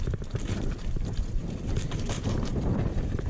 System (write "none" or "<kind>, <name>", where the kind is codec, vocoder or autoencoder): vocoder, BigVGAN v2